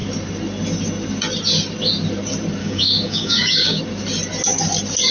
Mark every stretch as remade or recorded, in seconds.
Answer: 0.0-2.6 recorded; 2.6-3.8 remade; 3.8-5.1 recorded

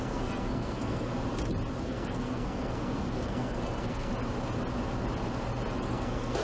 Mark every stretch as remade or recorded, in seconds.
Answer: 0.0-1.1 remade; 1.1-1.8 recorded; 1.8-4.1 remade; 4.1-5.8 recorded; 5.8-6.4 remade

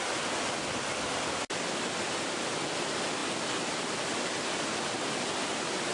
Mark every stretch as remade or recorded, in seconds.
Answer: 0.0-5.9 recorded

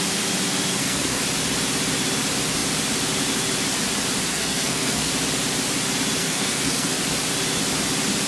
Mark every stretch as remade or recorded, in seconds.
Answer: 0.0-0.7 recorded; 0.7-1.2 remade; 1.2-4.3 recorded; 4.3-5.1 remade; 5.1-6.2 recorded; 6.2-7.0 remade; 7.0-8.3 recorded

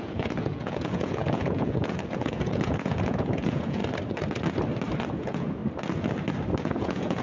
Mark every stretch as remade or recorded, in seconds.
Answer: 0.0-3.8 remade; 3.8-5.1 recorded; 5.1-5.6 remade; 5.6-6.6 recorded; 6.6-7.2 remade